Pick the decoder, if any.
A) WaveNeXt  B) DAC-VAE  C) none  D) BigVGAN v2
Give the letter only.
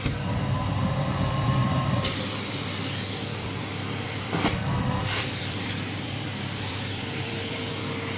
D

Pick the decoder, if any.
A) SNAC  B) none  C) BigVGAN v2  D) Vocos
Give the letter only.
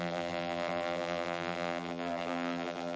C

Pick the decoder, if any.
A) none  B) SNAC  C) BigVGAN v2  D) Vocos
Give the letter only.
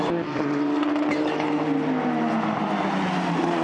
A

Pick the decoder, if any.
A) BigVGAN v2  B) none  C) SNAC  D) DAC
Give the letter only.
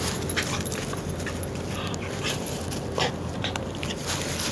B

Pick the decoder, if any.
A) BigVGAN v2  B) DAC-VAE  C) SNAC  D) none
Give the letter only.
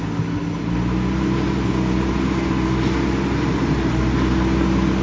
D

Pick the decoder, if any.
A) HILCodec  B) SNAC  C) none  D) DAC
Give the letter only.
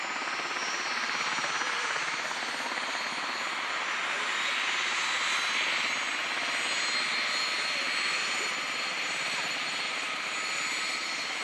C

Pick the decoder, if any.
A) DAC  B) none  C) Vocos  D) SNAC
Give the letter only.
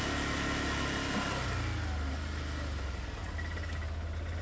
B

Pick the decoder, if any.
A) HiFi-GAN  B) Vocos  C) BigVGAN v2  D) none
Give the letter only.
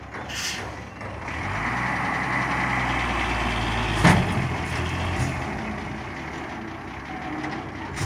D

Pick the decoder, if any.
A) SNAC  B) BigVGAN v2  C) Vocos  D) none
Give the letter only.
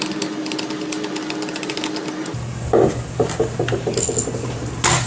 D